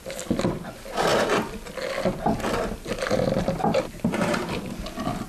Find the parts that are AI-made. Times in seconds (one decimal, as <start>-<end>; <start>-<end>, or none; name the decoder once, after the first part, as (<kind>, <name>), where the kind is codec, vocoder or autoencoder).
0.0-1.1 (vocoder, BigVGAN v2); 4.3-5.3